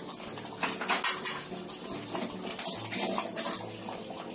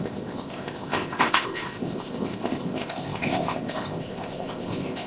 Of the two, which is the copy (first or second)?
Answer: second